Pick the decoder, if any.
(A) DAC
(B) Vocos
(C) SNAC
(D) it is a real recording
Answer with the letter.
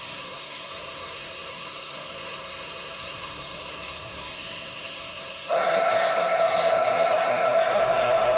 C